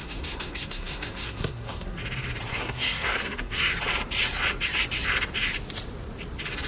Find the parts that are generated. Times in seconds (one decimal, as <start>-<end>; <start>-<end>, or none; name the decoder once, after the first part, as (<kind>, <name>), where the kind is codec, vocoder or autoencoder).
0.0-2.0 (codec, SNAC); 2.5-3.7